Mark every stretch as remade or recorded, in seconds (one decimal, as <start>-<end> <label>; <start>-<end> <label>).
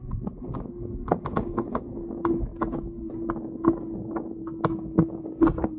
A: 0.0-5.8 recorded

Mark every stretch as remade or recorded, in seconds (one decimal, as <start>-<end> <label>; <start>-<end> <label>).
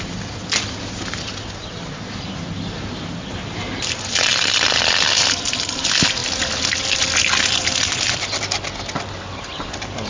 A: 0.0-10.1 recorded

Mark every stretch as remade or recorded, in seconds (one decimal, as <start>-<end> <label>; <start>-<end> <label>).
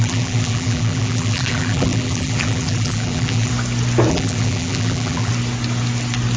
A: 0.0-3.5 remade; 3.5-4.1 recorded; 4.1-5.3 remade; 5.3-6.4 recorded